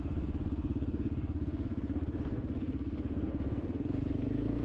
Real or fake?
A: fake